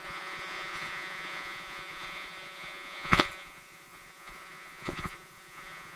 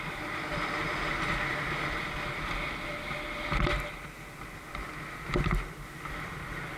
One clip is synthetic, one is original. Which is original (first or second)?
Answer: second